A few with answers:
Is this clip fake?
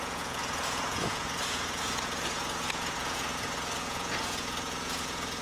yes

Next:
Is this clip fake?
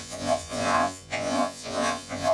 yes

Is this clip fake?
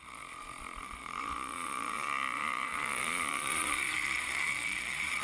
yes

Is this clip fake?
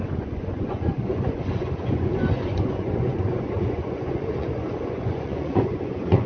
yes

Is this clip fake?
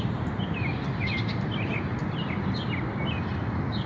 no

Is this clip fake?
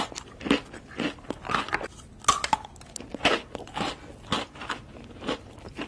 no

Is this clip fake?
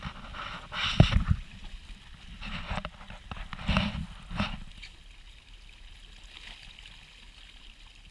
no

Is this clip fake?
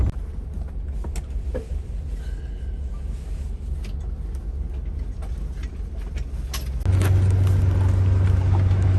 no